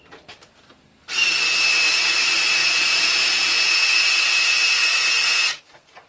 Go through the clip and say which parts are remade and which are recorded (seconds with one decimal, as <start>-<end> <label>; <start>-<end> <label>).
0.0-2.6 recorded; 2.6-5.6 remade; 5.6-6.1 recorded